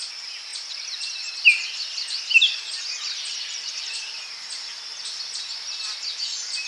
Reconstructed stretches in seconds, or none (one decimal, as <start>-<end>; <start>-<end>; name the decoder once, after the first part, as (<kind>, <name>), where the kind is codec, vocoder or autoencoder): 0.5-1.3 (vocoder, BigVGAN v2); 3.0-4.2